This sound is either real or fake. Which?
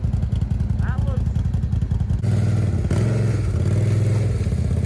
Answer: real